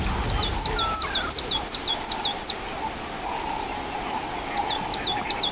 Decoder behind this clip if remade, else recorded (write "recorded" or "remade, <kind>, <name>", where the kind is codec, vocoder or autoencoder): recorded